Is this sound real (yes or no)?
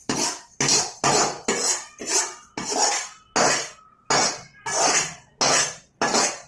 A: yes